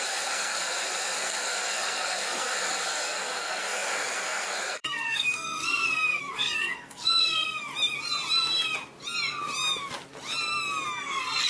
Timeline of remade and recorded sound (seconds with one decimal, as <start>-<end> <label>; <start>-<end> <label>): 0.0-7.7 remade; 7.7-11.0 recorded; 11.0-11.5 remade